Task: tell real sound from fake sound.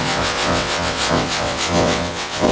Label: fake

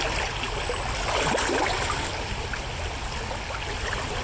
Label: real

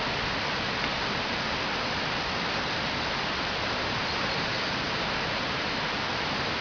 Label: real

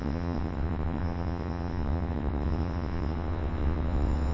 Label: fake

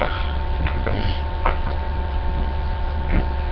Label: fake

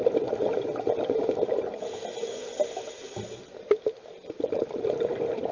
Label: real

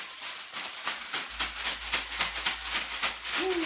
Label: real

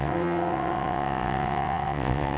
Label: fake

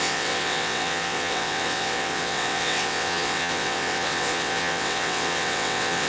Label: fake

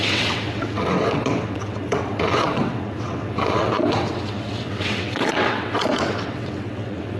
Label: fake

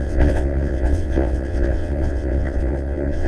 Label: fake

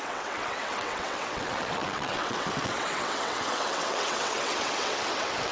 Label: fake